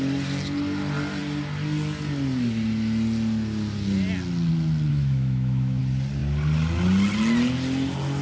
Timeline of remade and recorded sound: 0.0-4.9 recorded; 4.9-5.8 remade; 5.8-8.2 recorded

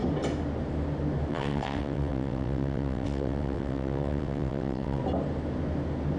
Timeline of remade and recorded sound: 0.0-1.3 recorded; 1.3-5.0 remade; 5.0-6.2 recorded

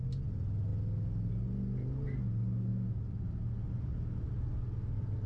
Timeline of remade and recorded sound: 0.0-5.3 recorded

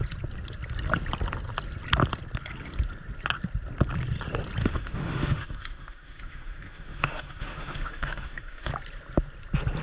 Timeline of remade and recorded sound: 0.0-4.6 recorded; 4.6-8.7 remade; 8.7-9.8 recorded

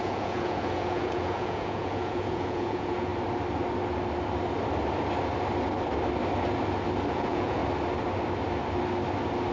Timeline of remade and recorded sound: 0.0-3.1 remade; 3.1-7.1 recorded; 7.1-7.6 remade; 7.6-9.5 recorded

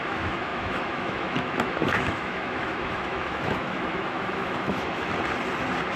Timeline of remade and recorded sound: 0.0-5.1 remade; 5.1-6.0 recorded

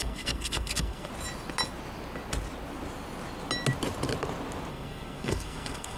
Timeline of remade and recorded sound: 0.0-1.1 remade; 1.1-4.7 recorded; 4.7-6.0 remade